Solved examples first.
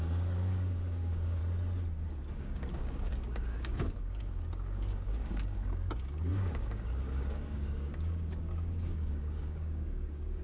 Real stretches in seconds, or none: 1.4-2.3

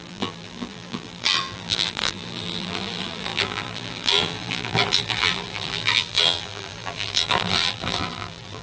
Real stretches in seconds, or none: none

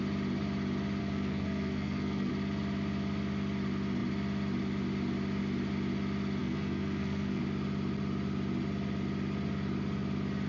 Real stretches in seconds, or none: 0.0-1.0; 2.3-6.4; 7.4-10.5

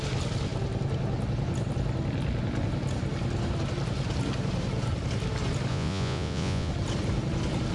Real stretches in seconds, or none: 0.0-5.7; 6.7-7.7